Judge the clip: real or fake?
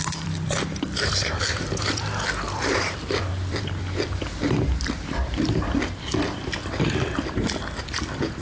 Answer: fake